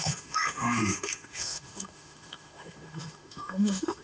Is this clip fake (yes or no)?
yes